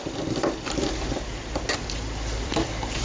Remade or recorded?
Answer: remade